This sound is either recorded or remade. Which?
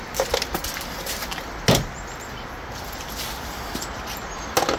recorded